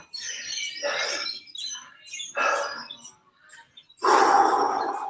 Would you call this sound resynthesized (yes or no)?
no